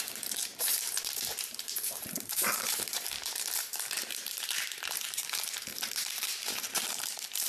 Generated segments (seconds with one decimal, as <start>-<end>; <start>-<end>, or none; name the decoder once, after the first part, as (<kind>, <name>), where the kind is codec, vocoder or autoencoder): 0.0-7.5 (vocoder, BigVGAN v2)